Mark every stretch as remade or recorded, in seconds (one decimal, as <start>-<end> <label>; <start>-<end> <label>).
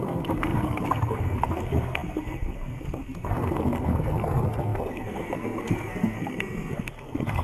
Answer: 0.0-7.4 remade